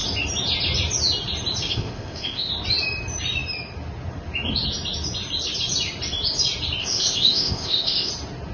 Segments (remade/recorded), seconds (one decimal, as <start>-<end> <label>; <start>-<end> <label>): 0.0-1.7 recorded; 1.7-2.5 remade; 2.5-6.8 recorded; 6.8-8.1 remade; 8.1-8.5 recorded